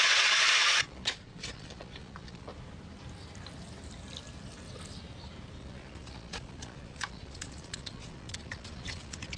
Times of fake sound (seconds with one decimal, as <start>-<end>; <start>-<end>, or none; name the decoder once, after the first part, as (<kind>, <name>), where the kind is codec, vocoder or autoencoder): 0.0-2.5 (vocoder, Vocos); 5.6-9.4